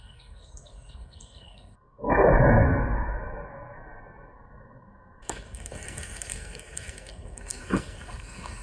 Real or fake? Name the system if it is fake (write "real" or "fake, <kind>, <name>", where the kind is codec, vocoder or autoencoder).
fake, codec, SNAC